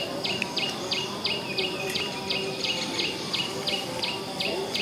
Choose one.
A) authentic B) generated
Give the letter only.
A